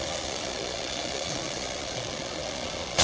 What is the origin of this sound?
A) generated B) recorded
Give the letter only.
A